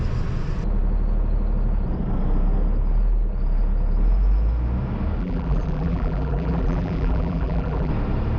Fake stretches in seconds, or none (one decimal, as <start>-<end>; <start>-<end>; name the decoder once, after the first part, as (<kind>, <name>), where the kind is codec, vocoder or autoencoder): 5.2-7.9 (vocoder, BigVGAN v2)